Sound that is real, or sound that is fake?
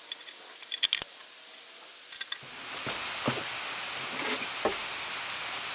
real